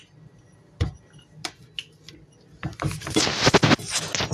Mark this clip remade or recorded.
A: recorded